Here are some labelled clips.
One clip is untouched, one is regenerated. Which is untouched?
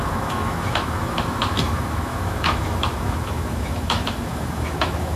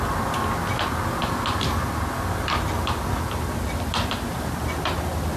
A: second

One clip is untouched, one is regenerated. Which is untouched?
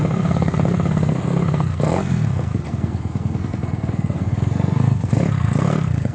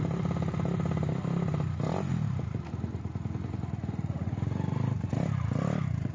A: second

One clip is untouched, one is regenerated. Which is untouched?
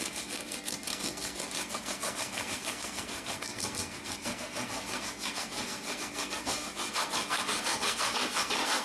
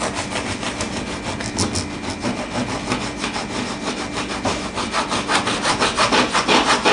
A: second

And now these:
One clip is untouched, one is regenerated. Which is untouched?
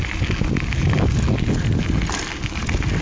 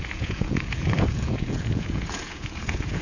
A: first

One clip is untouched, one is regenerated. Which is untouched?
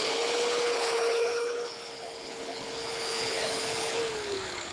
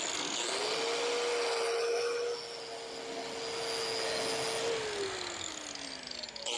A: second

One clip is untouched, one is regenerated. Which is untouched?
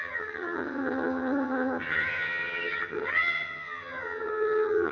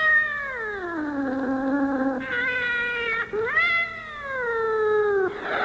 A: second